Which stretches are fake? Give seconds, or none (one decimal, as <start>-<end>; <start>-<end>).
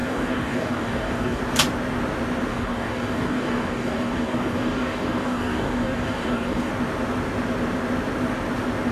0.0-1.4; 2.5-6.7